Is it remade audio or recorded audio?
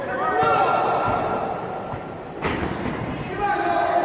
recorded